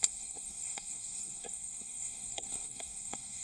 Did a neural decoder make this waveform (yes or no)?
yes